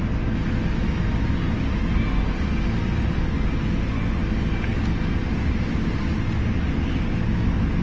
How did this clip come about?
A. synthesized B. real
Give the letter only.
B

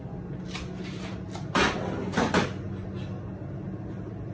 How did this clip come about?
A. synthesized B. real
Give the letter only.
B